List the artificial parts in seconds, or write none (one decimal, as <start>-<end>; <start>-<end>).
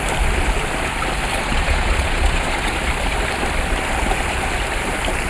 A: 1.3-2.7